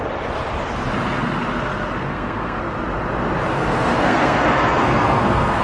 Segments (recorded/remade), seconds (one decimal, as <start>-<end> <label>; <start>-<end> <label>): 0.0-2.0 recorded; 2.0-2.6 remade; 2.6-3.5 recorded; 3.5-5.6 remade